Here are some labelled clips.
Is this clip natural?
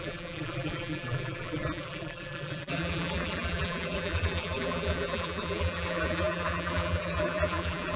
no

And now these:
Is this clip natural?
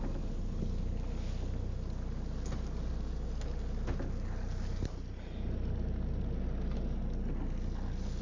yes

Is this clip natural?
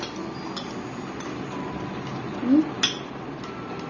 yes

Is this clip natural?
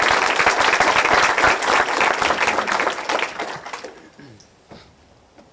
yes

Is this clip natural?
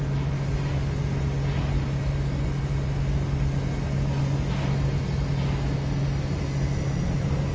yes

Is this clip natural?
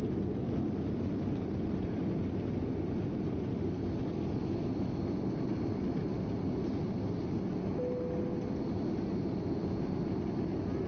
yes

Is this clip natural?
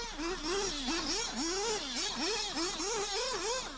yes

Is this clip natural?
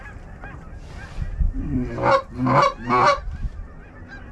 no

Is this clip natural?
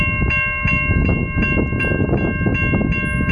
yes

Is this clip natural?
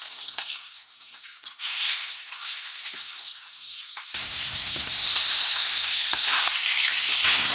no